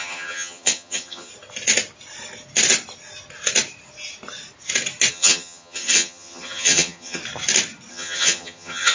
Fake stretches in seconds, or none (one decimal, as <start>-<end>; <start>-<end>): 0.0-1.3; 5.1-7.2; 7.9-8.9